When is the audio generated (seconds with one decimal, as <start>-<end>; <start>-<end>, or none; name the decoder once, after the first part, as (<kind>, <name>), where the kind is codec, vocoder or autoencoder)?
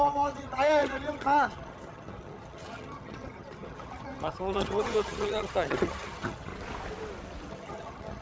0.0-6.5 (vocoder, HiFi-GAN); 7.5-8.2